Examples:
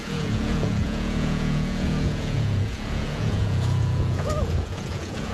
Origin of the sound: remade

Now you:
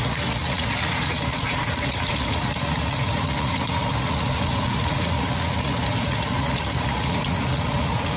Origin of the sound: remade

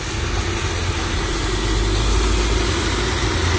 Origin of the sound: recorded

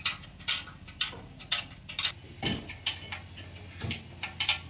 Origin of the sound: recorded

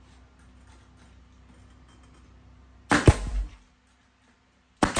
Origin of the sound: recorded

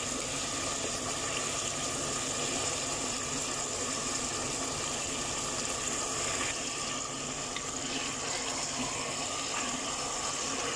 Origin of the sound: recorded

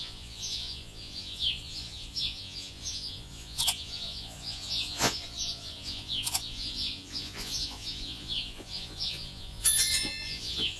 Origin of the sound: remade